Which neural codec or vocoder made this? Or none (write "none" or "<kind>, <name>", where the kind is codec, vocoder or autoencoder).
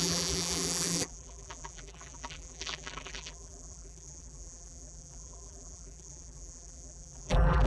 vocoder, BigVGAN v2